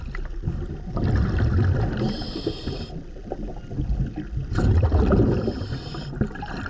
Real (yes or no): yes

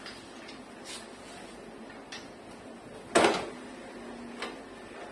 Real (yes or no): yes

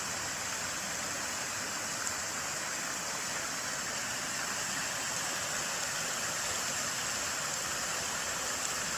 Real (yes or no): yes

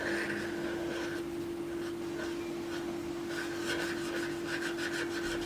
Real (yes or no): yes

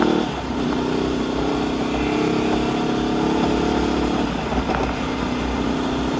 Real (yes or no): yes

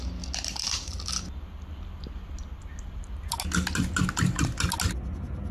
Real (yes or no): yes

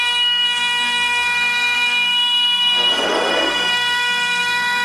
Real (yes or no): no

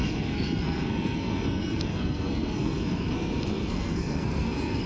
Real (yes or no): no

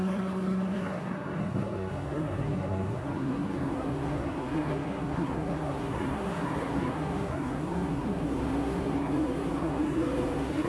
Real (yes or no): no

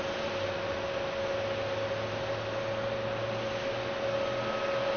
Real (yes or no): yes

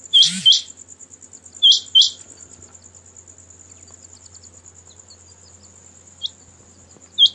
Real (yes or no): yes